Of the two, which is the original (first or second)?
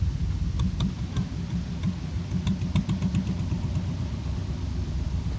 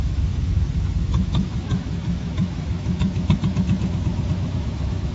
first